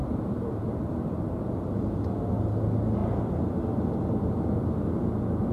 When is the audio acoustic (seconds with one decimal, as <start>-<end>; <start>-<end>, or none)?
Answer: 1.7-5.5